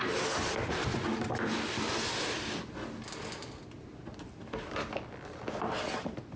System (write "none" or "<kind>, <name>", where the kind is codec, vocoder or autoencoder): none